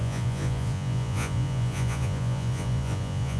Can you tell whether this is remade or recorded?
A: remade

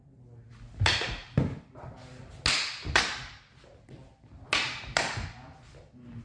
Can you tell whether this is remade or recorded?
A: recorded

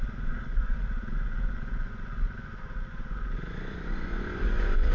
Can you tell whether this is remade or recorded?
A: remade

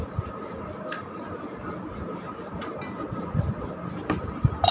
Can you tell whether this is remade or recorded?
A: recorded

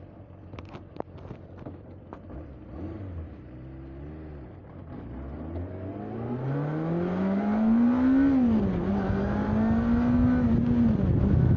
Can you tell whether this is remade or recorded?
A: recorded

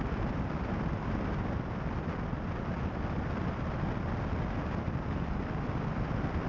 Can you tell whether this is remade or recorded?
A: recorded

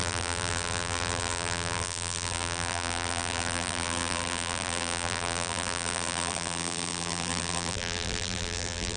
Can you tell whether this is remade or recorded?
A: remade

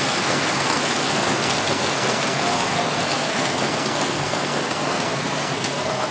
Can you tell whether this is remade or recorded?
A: remade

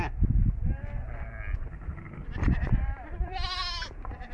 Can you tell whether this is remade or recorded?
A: recorded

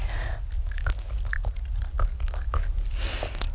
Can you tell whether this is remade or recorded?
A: recorded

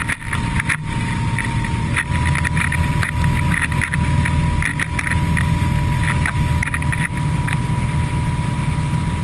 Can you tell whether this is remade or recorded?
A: recorded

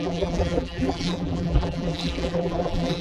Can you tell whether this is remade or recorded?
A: remade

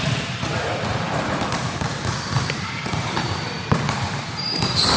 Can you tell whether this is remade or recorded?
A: remade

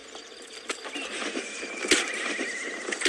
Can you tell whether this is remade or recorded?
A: recorded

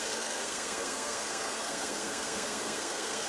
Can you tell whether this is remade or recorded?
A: remade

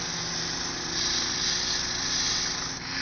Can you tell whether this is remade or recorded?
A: recorded